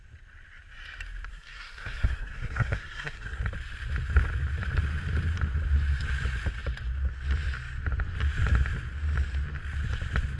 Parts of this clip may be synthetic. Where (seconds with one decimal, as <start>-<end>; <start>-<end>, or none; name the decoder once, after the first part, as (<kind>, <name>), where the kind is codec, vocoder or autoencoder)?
1.3-3.4 (codec, SNAC)